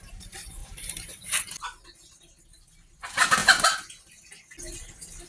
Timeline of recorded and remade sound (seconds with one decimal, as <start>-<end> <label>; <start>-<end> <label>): 0.0-0.6 recorded; 0.6-1.5 remade; 1.5-5.3 recorded